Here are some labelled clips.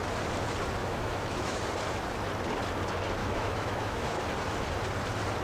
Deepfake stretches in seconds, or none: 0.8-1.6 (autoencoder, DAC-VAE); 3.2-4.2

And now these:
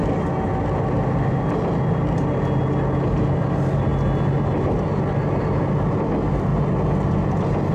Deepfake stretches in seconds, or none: none

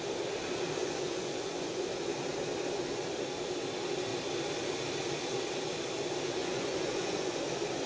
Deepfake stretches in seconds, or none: 0.8-1.9 (vocoder, Vocos); 6.4-7.4